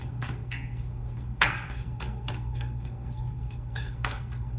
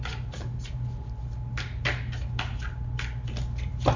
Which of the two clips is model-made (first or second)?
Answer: first